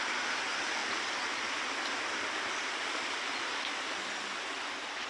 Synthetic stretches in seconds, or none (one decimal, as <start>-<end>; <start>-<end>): none